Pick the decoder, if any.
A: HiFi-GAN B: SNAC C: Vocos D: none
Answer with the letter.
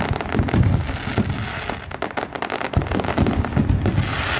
D